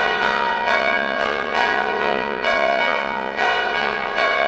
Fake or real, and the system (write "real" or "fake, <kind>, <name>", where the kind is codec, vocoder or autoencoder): fake, vocoder, WaveNeXt